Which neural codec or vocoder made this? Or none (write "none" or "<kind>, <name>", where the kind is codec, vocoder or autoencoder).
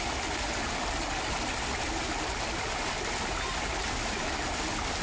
none